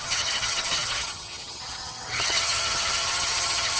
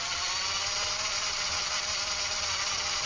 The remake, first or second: first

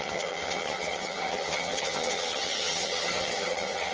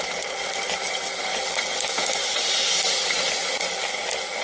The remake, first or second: first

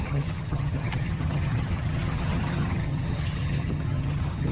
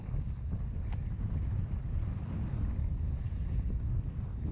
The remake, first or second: first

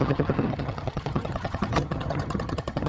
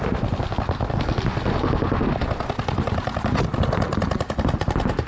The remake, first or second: first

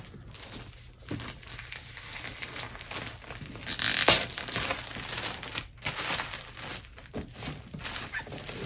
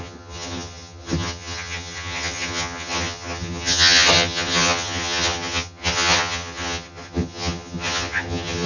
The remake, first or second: second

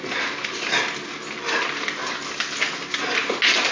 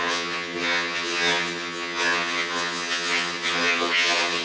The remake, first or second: second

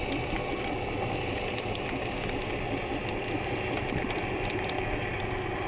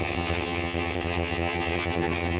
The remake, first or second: second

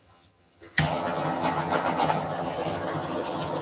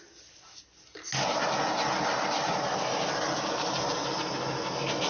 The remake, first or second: first